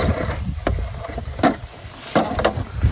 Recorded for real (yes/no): yes